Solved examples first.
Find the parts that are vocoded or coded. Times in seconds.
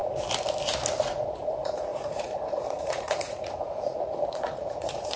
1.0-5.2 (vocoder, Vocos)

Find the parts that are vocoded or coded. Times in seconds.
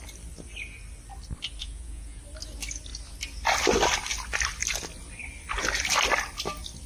1.6-2.2 (vocoder, Vocos)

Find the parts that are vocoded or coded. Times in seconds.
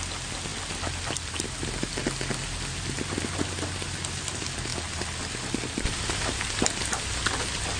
none